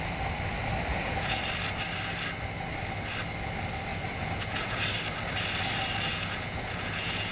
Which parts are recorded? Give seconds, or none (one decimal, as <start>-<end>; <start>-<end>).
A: 0.0-0.9; 1.4-3.9; 4.8-6.1